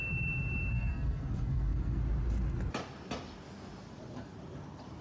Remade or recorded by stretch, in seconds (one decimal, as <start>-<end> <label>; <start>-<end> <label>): 0.0-0.7 recorded; 0.7-2.0 remade; 2.0-5.0 recorded